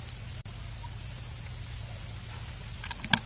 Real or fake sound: real